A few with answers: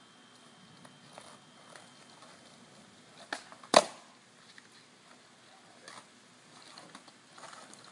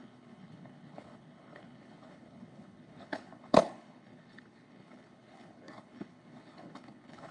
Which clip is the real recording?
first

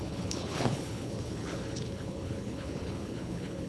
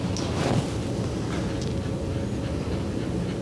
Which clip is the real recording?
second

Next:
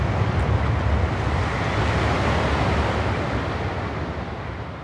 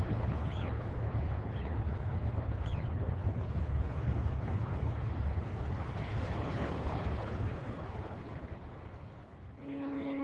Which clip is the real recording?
first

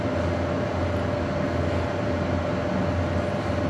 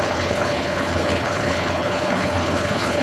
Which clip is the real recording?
first